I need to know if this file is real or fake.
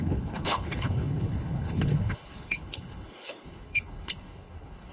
fake